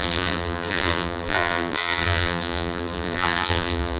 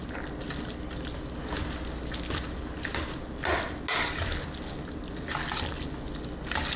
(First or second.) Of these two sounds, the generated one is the first